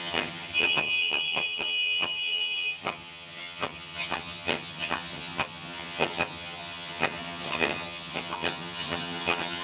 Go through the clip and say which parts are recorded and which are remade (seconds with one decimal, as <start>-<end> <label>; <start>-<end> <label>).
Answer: 0.0-9.6 remade